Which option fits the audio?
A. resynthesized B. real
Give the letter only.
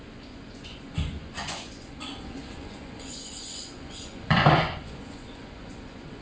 A